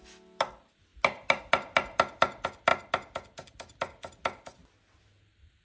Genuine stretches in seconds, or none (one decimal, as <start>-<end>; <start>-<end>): 0.0-5.6